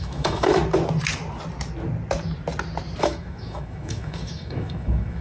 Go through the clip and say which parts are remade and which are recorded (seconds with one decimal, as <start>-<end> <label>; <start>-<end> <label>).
0.0-0.6 remade; 0.6-3.0 recorded; 3.0-5.2 remade

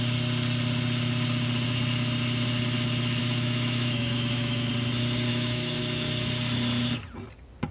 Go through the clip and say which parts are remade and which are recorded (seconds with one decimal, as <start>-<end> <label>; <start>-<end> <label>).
0.0-3.2 recorded; 3.2-4.7 remade; 4.7-5.3 recorded; 5.3-5.8 remade; 5.8-7.7 recorded

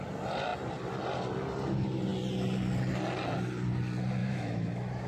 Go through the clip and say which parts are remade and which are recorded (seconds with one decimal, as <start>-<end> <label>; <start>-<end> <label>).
0.0-4.2 recorded; 4.2-5.1 remade

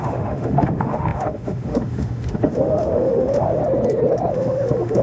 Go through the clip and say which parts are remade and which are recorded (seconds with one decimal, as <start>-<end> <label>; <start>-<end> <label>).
0.0-3.6 remade; 3.6-4.3 recorded; 4.3-5.0 remade

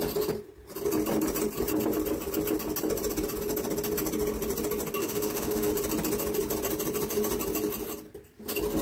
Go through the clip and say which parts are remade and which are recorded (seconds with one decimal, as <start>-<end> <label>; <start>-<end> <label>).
0.0-5.0 recorded; 5.0-5.7 remade; 5.7-8.8 recorded

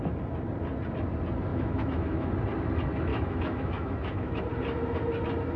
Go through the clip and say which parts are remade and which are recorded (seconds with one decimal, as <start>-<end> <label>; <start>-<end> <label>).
0.0-1.5 recorded; 1.5-2.3 remade; 2.3-3.1 recorded; 3.1-4.4 remade; 4.4-5.6 recorded